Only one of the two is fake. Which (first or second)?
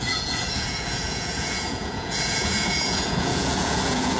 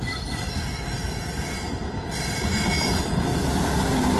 first